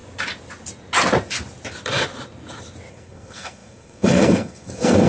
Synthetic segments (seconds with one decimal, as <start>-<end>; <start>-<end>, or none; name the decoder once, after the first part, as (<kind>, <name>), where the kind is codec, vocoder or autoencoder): 2.9-5.1 (codec, SNAC)